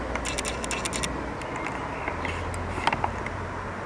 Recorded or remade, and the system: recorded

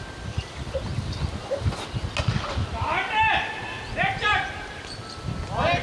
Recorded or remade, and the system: recorded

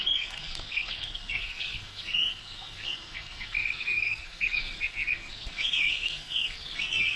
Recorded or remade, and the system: remade, codec, SNAC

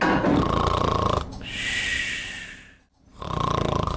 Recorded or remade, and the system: recorded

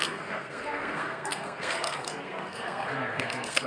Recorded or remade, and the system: remade, codec, SNAC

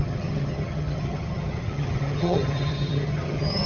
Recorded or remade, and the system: remade, vocoder, HiFi-GAN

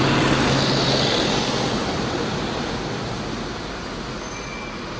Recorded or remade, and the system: recorded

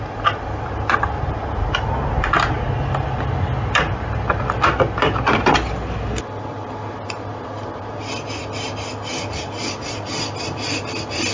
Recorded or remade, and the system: recorded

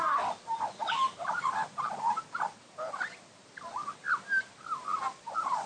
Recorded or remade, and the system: recorded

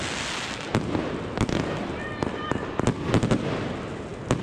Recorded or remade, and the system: recorded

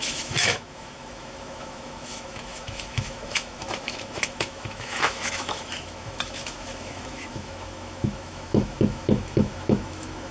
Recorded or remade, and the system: remade, autoencoder, DAC-VAE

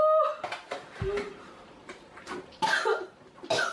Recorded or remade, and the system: recorded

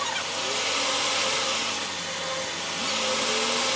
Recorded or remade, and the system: recorded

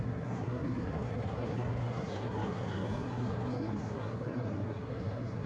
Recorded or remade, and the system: remade, codec, SNAC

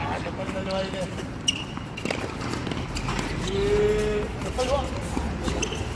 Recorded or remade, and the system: recorded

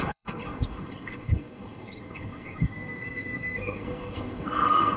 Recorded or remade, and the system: remade, codec, SNAC